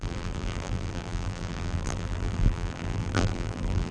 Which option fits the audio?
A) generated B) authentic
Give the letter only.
A